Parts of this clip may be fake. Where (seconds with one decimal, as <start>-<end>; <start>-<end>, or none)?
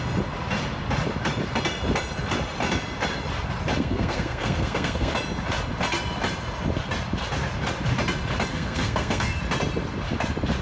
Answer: 3.8-5.1; 8.5-9.4